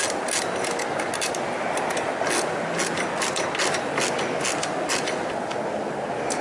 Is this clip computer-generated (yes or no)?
no